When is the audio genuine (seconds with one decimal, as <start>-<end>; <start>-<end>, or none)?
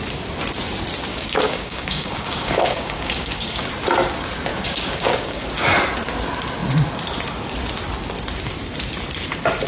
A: 0.0-1.1; 3.7-4.5; 5.5-9.7